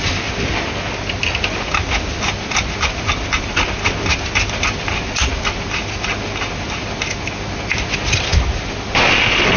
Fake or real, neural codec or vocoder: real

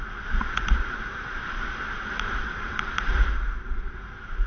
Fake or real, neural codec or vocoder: fake, vocoder, BigVGAN v2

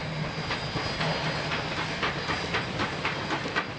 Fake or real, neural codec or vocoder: real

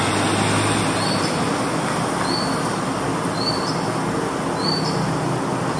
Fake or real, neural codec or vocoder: real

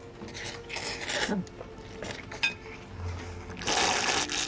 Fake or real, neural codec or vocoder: real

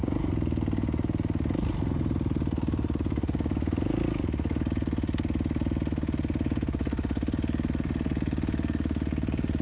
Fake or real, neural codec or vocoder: real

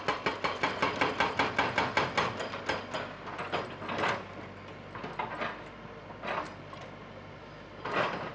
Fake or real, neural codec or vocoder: real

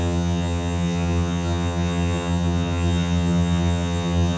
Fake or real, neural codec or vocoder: fake, vocoder, HiFi-GAN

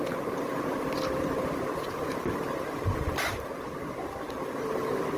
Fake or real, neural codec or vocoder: real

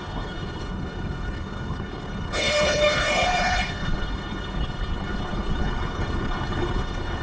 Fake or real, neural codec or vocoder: fake, codec, HILCodec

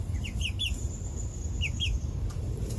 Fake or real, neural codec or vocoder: fake, vocoder, BigVGAN v2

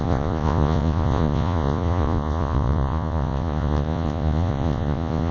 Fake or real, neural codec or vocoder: fake, vocoder, Vocos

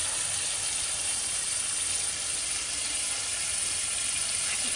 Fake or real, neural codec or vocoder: real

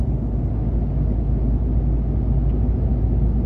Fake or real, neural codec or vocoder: real